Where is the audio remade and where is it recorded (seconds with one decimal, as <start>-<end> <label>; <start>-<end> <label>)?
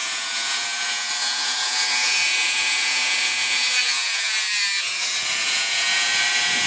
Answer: 0.0-6.7 remade